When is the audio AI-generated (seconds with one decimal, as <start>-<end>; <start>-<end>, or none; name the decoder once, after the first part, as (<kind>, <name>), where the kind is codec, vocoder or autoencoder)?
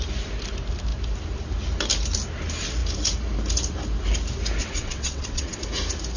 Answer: 4.6-5.6 (vocoder, WaveNeXt)